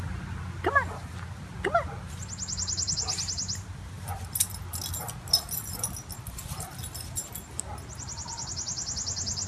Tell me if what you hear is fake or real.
real